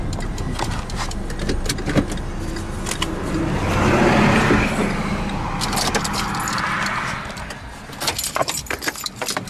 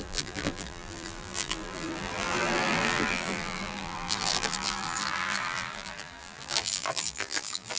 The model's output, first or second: second